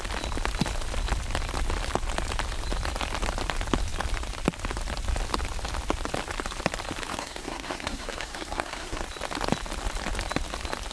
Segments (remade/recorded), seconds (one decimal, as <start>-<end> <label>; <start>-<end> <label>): 0.0-7.1 recorded; 7.1-9.0 remade; 9.0-10.9 recorded